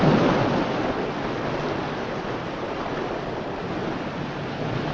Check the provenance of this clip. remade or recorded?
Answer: recorded